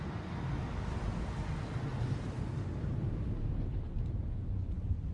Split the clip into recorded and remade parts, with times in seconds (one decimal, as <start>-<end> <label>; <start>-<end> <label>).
0.0-1.9 recorded; 1.9-3.9 remade; 3.9-5.1 recorded